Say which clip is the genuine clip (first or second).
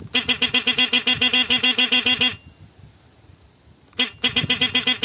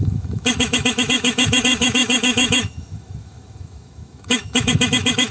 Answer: first